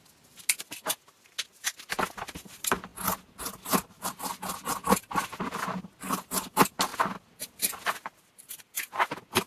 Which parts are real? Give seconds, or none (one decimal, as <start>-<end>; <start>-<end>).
0.0-9.5